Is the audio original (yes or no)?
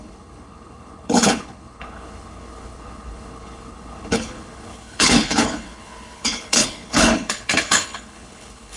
no